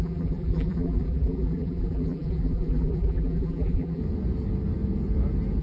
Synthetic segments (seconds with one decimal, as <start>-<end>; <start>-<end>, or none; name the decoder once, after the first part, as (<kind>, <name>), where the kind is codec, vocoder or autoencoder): 0.0-4.0 (vocoder, BigVGAN v2)